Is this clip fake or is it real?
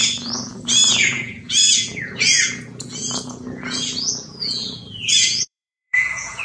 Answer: fake